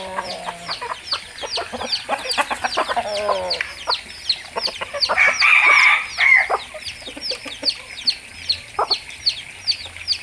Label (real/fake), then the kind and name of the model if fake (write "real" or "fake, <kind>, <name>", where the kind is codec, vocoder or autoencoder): real